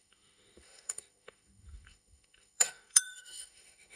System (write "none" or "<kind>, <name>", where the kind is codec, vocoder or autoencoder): autoencoder, DAC-VAE